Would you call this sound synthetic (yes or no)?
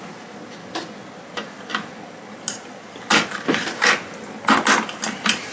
no